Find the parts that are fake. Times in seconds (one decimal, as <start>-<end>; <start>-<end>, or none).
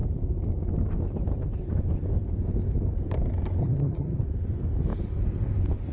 3.6-4.2